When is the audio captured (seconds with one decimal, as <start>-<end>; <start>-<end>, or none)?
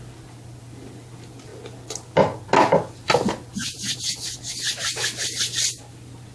0.0-6.3